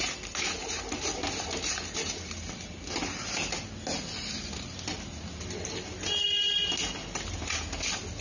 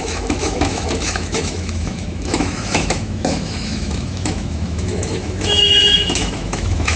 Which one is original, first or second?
first